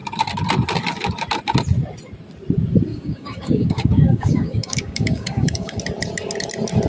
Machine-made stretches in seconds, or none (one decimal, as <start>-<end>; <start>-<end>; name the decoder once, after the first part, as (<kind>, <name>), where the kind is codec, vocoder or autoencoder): 2.9-5.8 (codec, DAC)